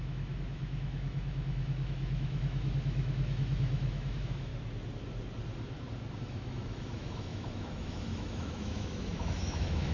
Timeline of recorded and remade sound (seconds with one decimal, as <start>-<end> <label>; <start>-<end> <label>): 0.0-4.5 remade; 4.5-6.2 recorded; 6.2-9.9 remade